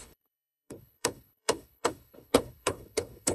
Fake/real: fake